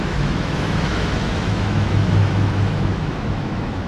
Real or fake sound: fake